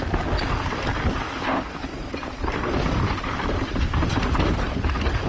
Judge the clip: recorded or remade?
recorded